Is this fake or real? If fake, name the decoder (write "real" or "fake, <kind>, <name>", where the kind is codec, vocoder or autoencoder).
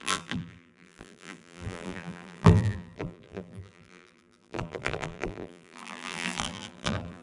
fake, vocoder, BigVGAN v2